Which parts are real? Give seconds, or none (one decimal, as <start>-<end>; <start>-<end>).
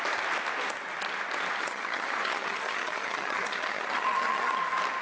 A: 0.0-1.6; 4.6-5.0